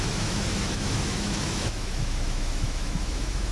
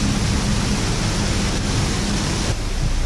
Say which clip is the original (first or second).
second